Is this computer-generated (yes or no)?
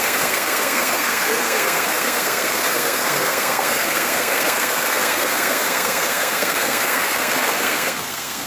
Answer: yes